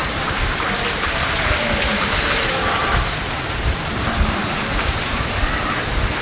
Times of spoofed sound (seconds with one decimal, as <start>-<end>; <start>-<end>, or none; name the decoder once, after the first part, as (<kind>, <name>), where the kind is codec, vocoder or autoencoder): 0.0-1.5 (vocoder, BigVGAN v2); 1.9-2.4; 2.8-5.4